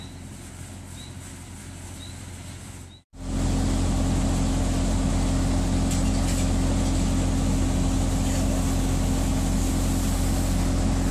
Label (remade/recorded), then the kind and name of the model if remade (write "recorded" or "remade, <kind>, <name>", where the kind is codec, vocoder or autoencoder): recorded